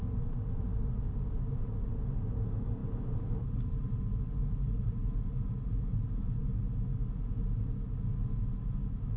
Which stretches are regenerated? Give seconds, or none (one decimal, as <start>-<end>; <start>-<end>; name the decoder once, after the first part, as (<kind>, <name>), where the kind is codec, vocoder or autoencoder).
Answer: 2.8-6.6 (vocoder, BigVGAN v2)